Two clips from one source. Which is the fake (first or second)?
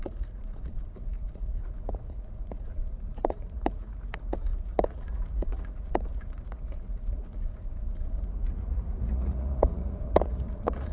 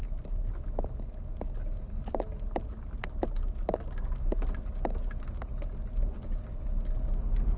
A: first